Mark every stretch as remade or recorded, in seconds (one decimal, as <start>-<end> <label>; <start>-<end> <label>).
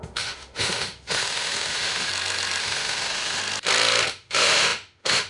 0.0-2.1 remade; 2.1-2.6 recorded; 2.6-3.4 remade; 3.4-4.1 recorded; 4.1-5.3 remade